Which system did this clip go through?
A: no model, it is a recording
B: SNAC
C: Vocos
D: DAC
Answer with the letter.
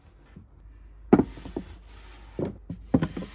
A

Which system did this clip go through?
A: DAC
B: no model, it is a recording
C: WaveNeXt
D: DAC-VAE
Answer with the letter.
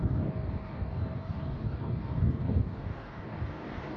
A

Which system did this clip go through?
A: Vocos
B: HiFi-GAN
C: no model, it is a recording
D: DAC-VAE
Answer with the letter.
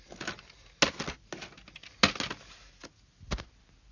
C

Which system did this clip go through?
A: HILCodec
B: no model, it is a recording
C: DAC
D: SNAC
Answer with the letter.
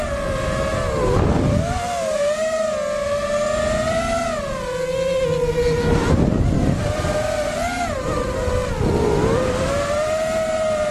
B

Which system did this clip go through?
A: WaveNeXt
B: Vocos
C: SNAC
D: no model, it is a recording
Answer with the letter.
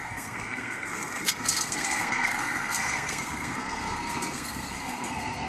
C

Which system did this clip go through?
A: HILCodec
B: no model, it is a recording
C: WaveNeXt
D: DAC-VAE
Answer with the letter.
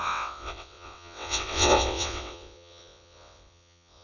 C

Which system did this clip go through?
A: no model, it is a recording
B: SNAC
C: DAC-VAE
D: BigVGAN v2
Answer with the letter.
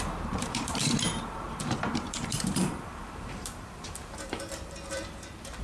D